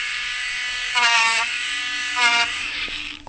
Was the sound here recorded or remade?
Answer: remade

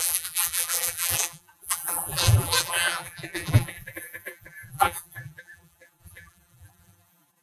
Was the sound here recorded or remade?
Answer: remade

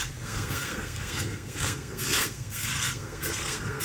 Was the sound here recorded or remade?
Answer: remade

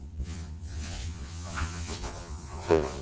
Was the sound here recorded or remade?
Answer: remade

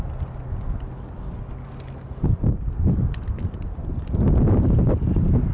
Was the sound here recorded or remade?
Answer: recorded